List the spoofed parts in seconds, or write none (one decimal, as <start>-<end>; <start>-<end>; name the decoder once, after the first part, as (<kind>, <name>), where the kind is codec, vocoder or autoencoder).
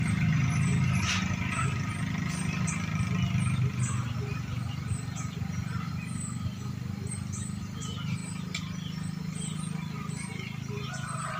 none